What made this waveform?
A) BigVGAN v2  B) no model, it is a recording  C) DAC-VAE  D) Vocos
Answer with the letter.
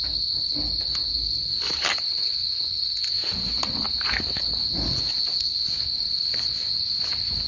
B